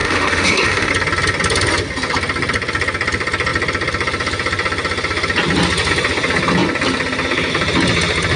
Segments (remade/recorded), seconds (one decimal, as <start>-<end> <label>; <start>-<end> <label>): 0.0-0.9 remade; 0.9-8.4 recorded